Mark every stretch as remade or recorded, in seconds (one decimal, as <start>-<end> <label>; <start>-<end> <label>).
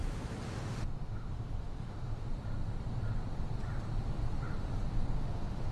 0.0-2.3 remade; 2.3-5.1 recorded; 5.1-5.7 remade